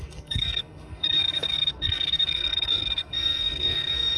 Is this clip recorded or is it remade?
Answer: remade